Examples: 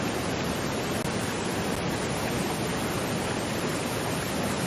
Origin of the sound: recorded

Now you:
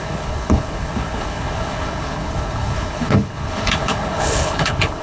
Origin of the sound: remade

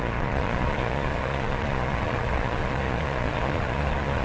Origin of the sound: remade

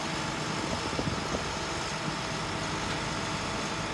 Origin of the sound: recorded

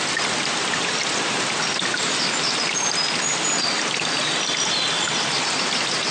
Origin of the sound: recorded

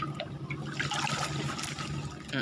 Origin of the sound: recorded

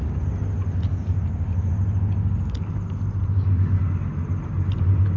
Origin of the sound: recorded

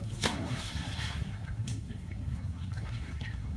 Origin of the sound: remade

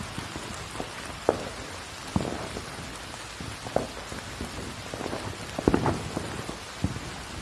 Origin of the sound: recorded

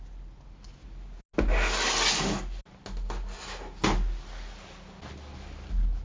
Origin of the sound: recorded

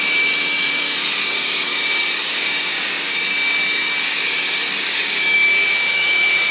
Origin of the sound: remade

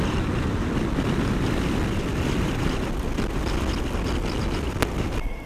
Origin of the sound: recorded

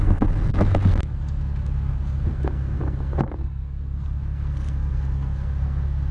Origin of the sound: remade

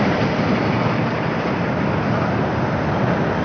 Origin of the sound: recorded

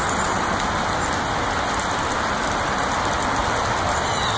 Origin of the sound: recorded